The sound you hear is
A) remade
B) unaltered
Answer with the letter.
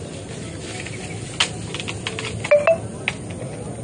B